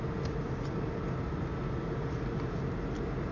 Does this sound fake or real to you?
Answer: real